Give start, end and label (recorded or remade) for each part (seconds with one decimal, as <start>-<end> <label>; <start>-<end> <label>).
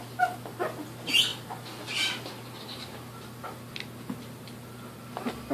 0.0-5.5 recorded